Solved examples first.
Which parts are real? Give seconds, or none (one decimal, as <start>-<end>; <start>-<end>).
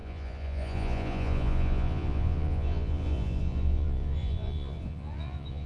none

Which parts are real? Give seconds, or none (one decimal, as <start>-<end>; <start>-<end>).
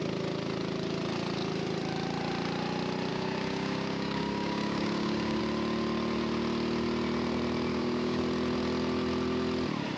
0.0-3.1; 5.4-7.7; 8.2-10.0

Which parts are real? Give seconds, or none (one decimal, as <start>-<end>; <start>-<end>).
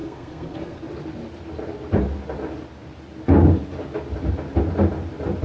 0.8-5.4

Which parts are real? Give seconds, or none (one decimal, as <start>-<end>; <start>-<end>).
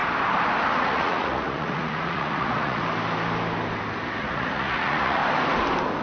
0.0-0.8; 2.8-4.2; 5.2-6.0